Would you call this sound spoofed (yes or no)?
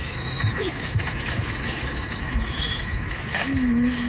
yes